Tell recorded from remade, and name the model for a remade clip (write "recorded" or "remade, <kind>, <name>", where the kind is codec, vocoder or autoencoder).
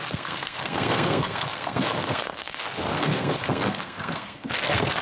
remade, codec, SNAC